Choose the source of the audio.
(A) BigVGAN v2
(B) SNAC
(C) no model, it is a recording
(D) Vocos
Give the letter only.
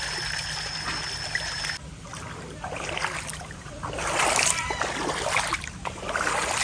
C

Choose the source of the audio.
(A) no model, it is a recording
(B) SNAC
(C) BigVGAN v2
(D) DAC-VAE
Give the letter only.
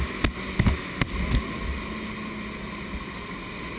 A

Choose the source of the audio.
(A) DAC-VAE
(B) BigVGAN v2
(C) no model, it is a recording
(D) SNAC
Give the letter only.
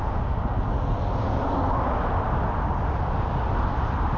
C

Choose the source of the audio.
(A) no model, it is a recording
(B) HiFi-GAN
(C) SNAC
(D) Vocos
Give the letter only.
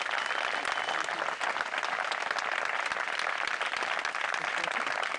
A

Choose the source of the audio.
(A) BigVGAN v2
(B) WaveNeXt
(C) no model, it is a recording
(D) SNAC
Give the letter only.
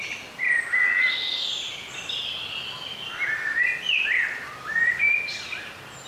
C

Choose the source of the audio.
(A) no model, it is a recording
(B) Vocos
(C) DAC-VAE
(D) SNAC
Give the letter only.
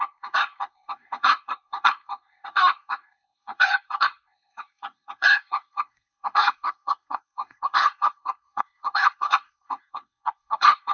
D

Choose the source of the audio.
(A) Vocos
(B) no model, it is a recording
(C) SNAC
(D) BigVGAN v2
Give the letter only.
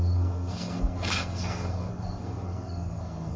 C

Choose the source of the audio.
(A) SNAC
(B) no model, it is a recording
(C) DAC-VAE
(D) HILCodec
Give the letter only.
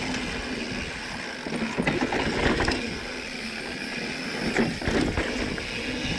B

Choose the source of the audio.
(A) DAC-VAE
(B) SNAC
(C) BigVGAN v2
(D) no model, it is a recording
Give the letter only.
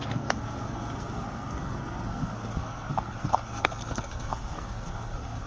B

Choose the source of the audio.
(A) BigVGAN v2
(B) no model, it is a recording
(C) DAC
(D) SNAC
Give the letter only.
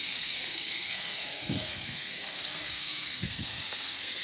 D